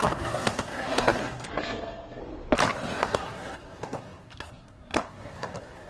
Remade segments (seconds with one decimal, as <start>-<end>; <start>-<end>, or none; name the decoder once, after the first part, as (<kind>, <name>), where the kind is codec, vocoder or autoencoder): 0.0-2.2 (codec, SNAC); 3.0-5.9